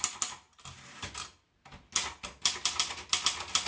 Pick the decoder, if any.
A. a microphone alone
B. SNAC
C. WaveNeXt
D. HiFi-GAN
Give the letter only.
A